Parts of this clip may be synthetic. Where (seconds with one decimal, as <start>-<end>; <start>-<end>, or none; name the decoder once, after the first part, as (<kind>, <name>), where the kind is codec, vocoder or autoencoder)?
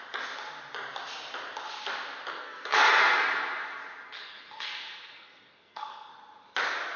2.3-3.0 (codec, SNAC); 4.2-6.1